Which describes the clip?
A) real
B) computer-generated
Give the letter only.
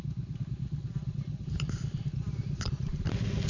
A